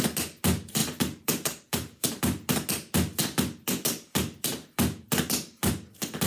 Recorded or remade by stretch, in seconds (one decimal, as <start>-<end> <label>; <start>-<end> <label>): 0.0-0.8 recorded; 0.8-2.2 remade; 2.2-6.3 recorded